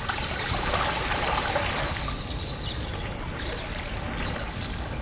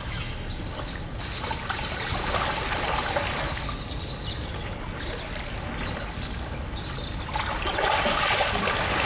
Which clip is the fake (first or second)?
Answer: first